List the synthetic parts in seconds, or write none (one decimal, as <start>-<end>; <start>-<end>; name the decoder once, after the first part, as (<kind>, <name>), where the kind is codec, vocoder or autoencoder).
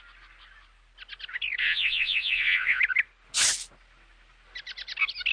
1.6-2.8 (vocoder, WaveNeXt)